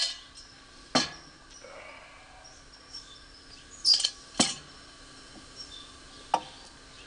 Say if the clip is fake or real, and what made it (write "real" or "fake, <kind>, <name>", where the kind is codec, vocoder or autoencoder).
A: real